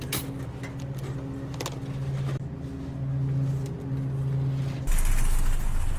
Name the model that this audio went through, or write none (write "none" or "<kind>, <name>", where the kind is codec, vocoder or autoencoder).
none